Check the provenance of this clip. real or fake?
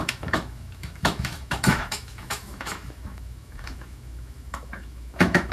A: fake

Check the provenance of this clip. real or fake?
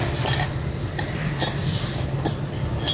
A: real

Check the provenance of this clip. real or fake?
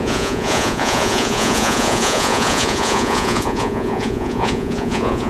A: fake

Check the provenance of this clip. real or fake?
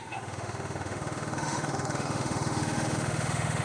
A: fake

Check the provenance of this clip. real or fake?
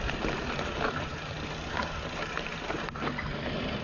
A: real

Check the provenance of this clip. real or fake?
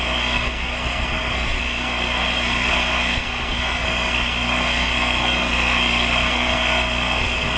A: fake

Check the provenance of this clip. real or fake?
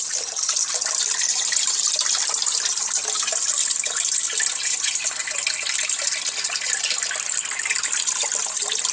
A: real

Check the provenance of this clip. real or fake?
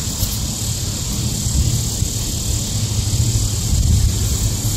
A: real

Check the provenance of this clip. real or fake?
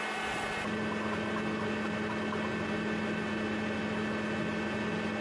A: real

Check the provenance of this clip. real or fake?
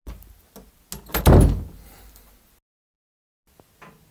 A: real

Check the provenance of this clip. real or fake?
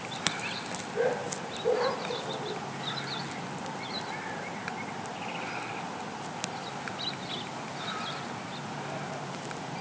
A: real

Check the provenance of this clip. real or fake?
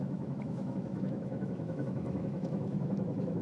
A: fake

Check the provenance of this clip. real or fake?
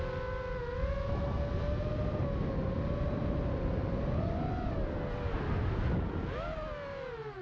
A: real